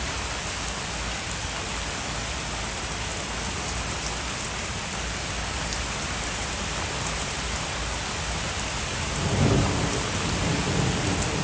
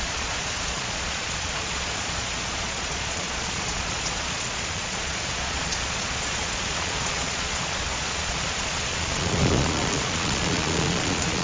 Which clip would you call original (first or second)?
first